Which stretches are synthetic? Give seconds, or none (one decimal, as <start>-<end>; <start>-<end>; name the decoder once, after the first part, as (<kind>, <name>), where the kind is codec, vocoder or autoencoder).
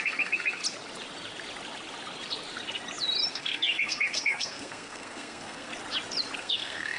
0.0-0.6 (codec, SNAC); 3.3-5.7; 6.4-7.0